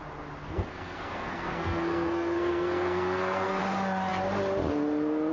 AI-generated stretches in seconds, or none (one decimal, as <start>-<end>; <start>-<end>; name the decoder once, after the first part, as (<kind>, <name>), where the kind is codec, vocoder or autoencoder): 0.4-3.6 (codec, SNAC)